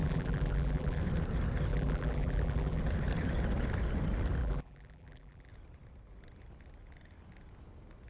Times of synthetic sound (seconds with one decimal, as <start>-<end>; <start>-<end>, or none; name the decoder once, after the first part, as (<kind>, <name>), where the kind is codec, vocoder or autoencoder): 0.0-1.0 (vocoder, BigVGAN v2); 1.7-2.8; 4.4-5.5